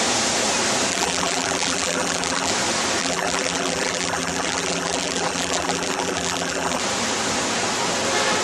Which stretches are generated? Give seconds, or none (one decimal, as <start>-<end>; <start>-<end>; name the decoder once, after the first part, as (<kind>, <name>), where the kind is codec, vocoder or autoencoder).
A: 0.9-2.5 (vocoder, BigVGAN v2); 3.0-6.8